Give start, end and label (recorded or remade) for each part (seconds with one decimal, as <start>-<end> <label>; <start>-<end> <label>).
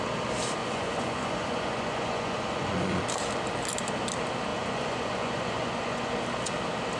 0.0-0.6 recorded; 0.6-3.0 remade; 3.0-4.5 recorded; 4.5-6.0 remade; 6.0-7.0 recorded